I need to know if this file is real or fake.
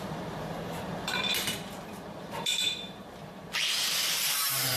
fake